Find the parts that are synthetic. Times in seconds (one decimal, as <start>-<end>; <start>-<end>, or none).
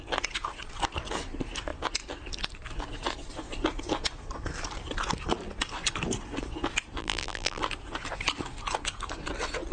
7.0-7.6